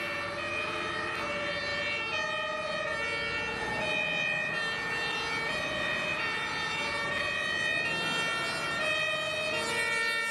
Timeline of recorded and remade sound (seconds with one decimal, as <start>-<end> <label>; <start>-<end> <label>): 0.0-10.3 recorded